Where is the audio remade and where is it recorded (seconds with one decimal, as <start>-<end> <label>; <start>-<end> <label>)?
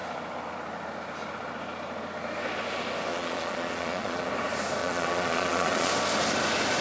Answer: 0.0-3.1 recorded; 3.1-4.3 remade; 4.3-4.8 recorded; 4.8-5.9 remade; 5.9-6.8 recorded